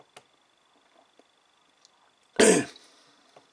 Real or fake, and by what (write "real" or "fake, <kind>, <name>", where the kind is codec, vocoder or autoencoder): real